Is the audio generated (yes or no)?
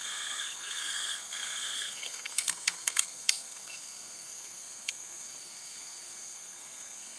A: yes